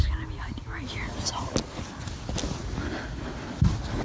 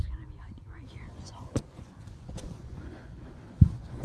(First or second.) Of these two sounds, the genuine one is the first